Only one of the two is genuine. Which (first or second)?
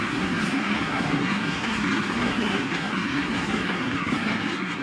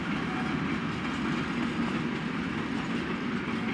second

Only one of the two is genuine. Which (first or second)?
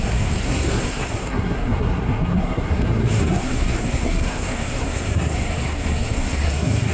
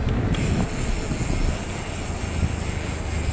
second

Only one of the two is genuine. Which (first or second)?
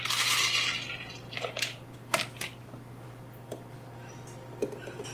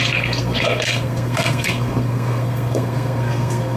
first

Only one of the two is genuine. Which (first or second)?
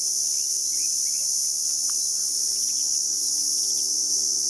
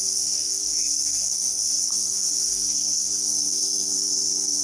first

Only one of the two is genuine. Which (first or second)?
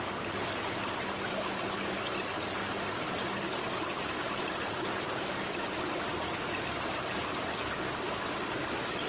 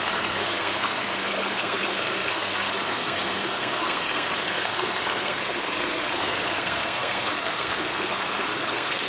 first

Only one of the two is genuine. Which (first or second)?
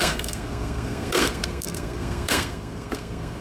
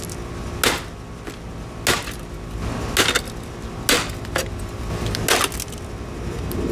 second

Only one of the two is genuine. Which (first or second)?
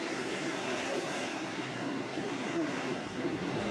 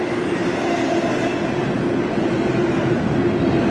second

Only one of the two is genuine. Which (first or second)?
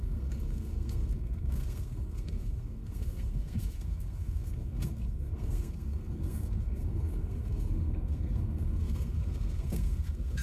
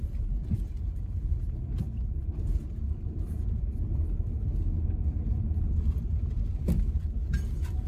second